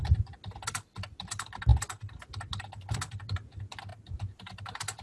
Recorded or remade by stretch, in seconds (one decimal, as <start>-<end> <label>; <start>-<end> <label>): 0.0-3.9 recorded; 3.9-4.6 remade; 4.6-5.0 recorded

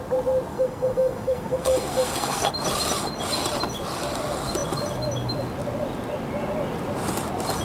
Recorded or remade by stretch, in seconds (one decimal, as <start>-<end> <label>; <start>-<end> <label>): 0.0-0.5 recorded; 0.5-2.5 remade; 2.5-7.6 recorded

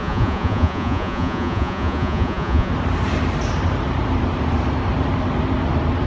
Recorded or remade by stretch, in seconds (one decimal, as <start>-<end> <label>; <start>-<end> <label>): 0.0-2.7 remade; 2.7-6.1 recorded

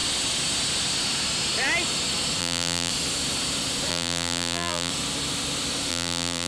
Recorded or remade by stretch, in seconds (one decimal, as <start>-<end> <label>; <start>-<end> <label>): 0.0-2.4 recorded; 2.4-2.9 remade; 2.9-3.9 recorded; 3.9-4.9 remade; 4.9-5.9 recorded; 5.9-6.5 remade